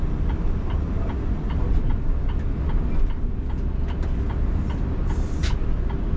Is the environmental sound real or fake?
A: real